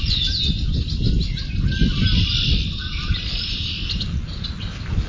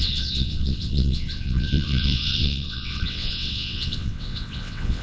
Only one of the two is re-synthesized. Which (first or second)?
second